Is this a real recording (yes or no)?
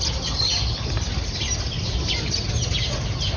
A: yes